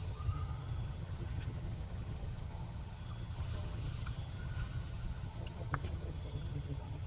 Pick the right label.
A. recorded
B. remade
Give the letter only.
B